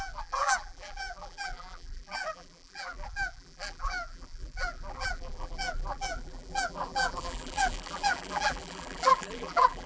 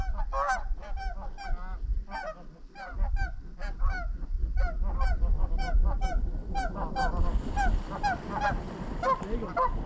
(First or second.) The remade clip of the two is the first